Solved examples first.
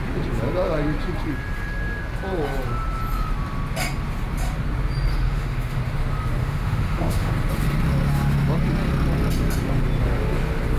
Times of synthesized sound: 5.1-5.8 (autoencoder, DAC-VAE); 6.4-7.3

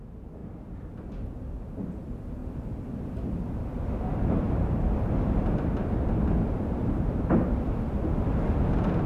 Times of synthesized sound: 0.4-0.9 (vocoder, BigVGAN v2); 2.4-7.5